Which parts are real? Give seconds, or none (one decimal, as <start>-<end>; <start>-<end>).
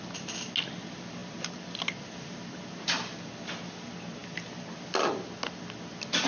0.0-6.3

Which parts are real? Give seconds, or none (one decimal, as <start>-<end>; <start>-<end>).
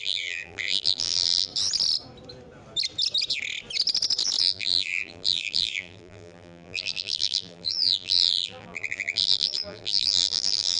1.5-4.4